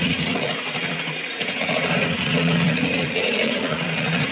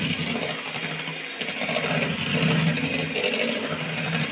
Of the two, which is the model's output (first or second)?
first